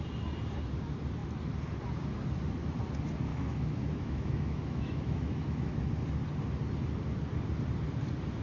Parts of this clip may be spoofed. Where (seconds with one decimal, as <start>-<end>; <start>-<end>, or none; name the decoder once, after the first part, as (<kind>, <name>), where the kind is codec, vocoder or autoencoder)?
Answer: 3.3-5.8 (autoencoder, DAC-VAE)